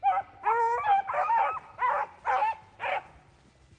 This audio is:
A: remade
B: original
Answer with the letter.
B